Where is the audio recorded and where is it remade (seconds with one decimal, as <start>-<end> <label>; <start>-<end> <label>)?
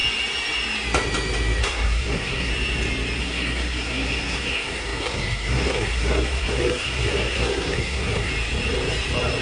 0.0-1.6 recorded; 1.6-2.5 remade; 2.5-3.2 recorded; 3.2-8.3 remade; 8.3-9.4 recorded